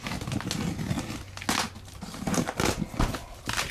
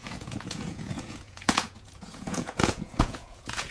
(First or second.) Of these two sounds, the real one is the first